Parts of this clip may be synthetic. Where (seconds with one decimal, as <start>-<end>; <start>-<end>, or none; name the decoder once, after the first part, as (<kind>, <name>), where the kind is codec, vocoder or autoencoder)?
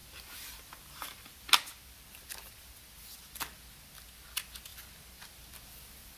4.7-5.2 (vocoder, BigVGAN v2)